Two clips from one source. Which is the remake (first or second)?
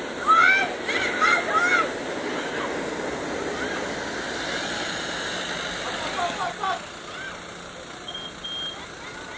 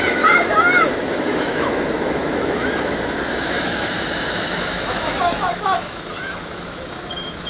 second